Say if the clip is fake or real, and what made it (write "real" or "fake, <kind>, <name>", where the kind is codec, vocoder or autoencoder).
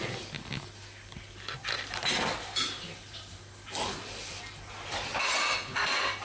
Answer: real